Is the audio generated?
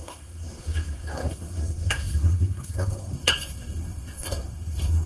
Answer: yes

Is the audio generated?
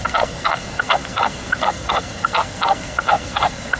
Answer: yes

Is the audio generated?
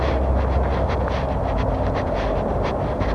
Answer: no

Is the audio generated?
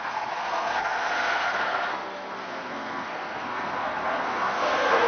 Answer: yes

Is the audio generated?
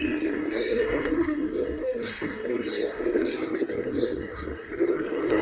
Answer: yes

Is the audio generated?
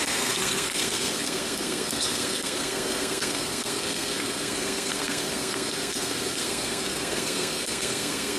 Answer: yes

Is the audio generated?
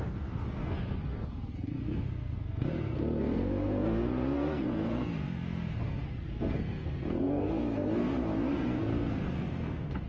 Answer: yes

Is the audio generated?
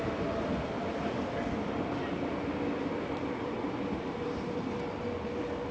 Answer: no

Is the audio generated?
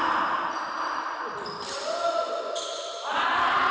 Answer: no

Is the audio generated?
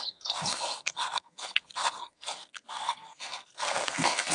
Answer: yes